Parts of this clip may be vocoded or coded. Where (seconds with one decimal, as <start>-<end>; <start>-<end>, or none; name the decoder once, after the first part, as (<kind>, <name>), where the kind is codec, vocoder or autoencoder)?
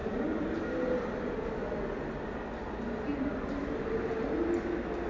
0.0-0.6 (vocoder, BigVGAN v2); 3.1-4.0